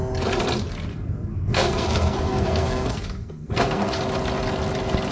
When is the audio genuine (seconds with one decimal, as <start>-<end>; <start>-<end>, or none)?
0.0-0.9; 4.0-5.1